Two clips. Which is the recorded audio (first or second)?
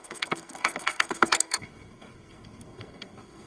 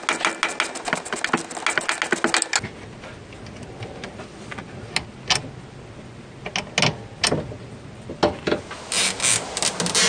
second